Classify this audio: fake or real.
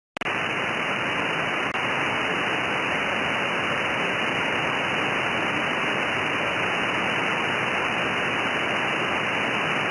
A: real